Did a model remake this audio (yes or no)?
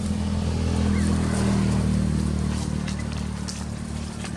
no